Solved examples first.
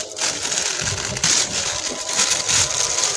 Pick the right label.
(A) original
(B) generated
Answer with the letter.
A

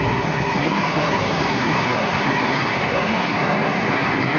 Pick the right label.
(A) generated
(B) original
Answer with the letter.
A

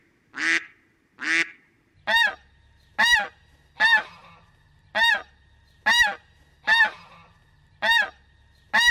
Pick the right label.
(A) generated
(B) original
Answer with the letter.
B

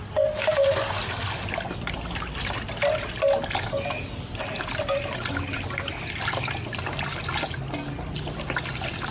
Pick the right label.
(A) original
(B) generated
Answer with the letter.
A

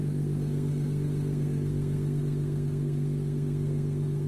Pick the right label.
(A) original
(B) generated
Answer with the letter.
B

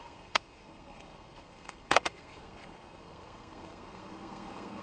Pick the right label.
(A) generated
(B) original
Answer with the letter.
A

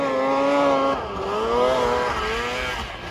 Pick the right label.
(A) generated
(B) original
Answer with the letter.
B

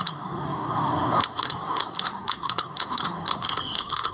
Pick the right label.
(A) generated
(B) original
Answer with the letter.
A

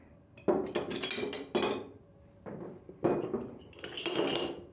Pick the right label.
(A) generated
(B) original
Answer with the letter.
B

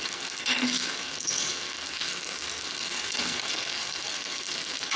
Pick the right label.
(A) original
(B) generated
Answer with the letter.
B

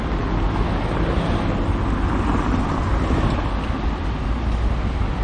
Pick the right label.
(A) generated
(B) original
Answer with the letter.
B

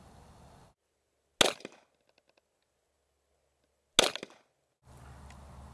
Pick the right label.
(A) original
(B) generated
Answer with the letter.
A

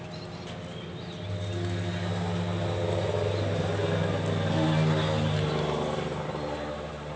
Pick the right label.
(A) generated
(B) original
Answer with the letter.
B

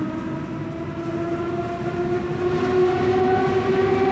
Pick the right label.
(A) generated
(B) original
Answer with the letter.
B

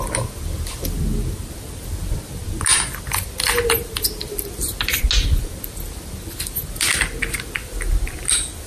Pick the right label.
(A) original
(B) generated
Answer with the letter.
A